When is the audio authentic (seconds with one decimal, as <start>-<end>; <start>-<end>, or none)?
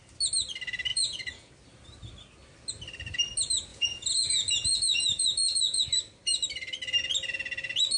0.0-0.9; 1.5-3.7; 5.8-8.0